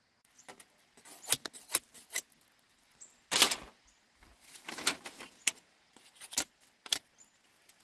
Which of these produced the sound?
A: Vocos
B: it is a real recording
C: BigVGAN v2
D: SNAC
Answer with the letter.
B